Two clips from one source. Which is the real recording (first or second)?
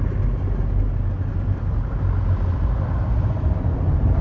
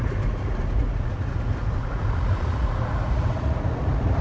first